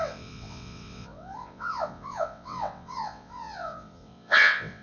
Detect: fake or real fake